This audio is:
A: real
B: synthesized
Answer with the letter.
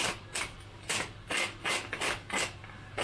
A